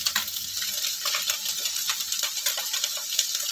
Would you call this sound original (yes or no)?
yes